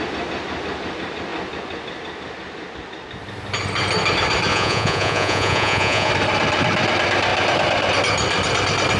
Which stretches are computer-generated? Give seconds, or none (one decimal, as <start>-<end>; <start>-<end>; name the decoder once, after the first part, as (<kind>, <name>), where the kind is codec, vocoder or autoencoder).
4.5-6.1 (vocoder, Vocos)